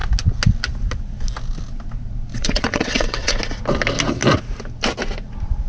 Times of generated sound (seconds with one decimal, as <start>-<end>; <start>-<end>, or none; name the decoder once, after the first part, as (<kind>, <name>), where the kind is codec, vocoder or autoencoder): 2.3-3.4 (vocoder, WaveNeXt)